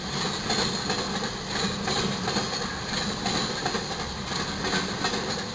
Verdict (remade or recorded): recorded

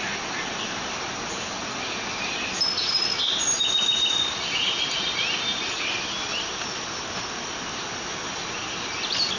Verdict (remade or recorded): recorded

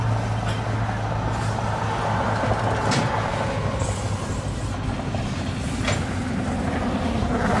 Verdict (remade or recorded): recorded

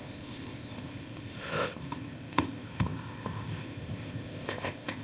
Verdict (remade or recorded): remade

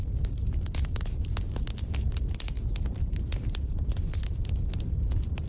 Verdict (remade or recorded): recorded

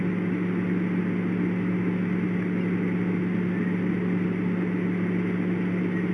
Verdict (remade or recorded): recorded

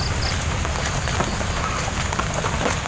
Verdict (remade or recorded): recorded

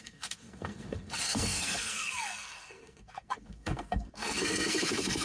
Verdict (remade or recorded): remade